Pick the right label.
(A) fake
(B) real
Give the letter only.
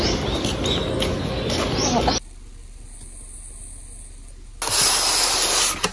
B